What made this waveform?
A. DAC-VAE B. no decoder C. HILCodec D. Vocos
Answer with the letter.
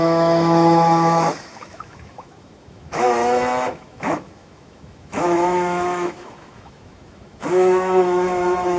A